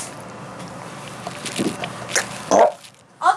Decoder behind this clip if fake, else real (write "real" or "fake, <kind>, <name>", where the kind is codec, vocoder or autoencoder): real